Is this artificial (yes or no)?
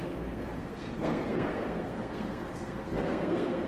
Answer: yes